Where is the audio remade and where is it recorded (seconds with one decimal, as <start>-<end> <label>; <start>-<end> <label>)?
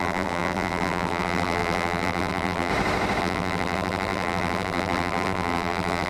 0.0-2.7 remade; 2.7-3.2 recorded; 3.2-6.1 remade